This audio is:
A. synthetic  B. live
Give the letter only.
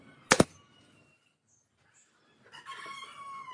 B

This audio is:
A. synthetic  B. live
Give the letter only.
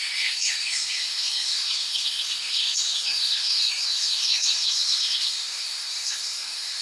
A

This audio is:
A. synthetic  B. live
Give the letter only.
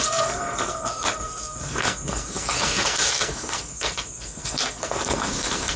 A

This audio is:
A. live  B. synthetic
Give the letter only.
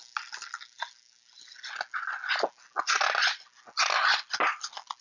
A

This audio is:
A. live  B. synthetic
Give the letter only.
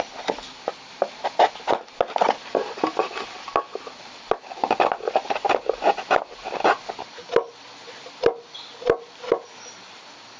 A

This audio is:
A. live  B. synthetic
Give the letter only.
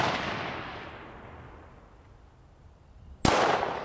A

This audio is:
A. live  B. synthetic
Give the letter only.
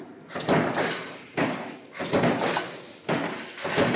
A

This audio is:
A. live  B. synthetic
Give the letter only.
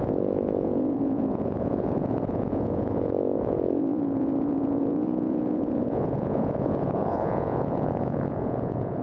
B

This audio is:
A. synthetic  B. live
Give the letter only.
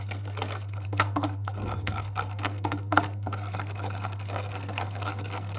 A